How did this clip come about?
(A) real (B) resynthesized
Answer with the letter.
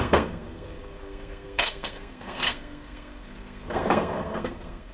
B